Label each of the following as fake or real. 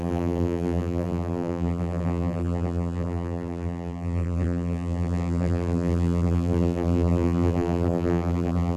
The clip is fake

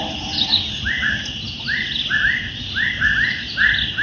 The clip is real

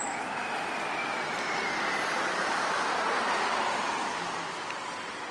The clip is fake